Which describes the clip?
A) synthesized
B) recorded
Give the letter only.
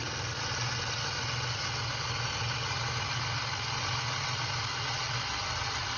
B